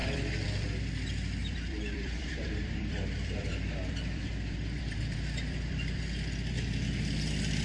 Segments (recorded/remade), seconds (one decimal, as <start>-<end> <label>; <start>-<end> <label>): 0.0-0.8 remade; 0.8-1.4 recorded; 1.4-6.0 remade; 6.0-7.6 recorded

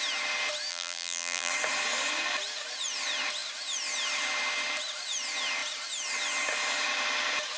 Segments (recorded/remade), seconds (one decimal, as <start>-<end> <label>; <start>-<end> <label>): 0.0-0.7 recorded; 0.7-1.5 remade; 1.5-7.6 recorded

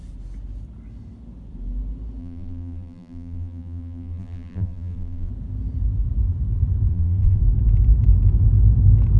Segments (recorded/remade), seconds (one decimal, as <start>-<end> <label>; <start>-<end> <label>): 0.0-2.2 recorded; 2.2-5.3 remade; 5.3-6.9 recorded; 6.9-7.4 remade; 7.4-9.2 recorded

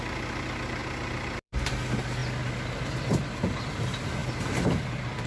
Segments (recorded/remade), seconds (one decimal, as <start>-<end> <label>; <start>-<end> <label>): 0.0-0.8 recorded; 0.8-1.7 remade; 1.7-4.2 recorded; 4.2-5.3 remade

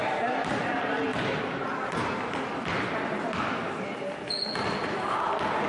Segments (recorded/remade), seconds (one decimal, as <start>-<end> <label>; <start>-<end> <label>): 0.0-1.1 remade; 1.1-3.9 recorded; 3.9-5.7 remade